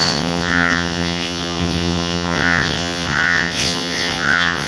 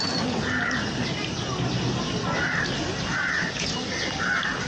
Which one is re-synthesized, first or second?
first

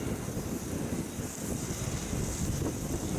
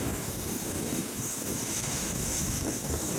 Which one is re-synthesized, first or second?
second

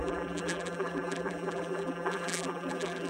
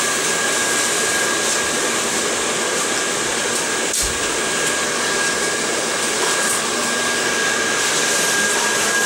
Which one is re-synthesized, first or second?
first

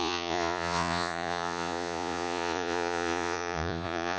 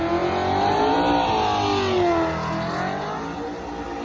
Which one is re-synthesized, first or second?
first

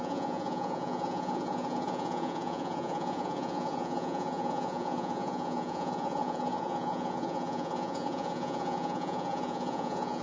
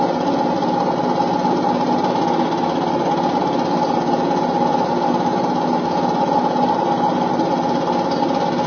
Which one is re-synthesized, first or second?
first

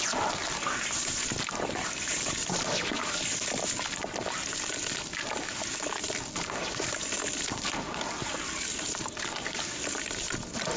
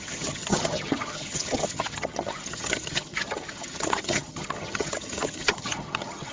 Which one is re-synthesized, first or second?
second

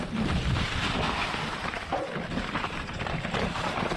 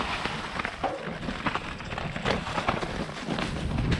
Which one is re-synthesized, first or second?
first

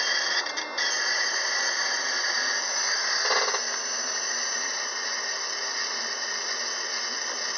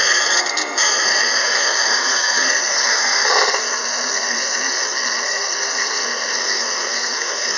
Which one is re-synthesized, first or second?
second